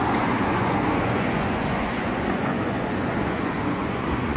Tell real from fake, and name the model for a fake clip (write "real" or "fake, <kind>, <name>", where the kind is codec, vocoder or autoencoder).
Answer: fake, vocoder, Vocos